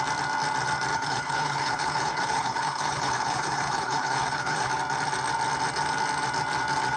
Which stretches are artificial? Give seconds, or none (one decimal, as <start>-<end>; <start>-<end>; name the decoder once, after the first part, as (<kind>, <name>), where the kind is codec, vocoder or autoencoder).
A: 0.9-4.7 (codec, HILCodec)